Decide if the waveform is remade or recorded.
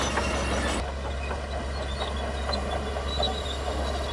recorded